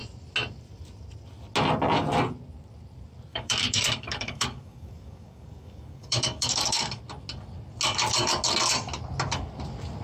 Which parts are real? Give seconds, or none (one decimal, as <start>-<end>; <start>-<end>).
0.0-3.3; 7.0-10.0